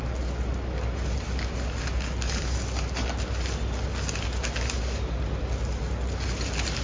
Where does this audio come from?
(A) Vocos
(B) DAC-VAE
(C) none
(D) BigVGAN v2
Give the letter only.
C